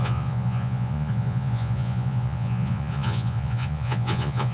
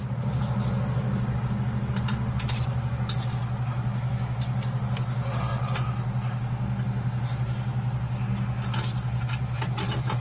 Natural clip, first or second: second